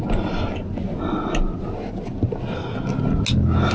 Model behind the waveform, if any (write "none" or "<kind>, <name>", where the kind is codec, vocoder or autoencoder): none